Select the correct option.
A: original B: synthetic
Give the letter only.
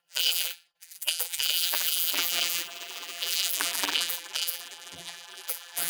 B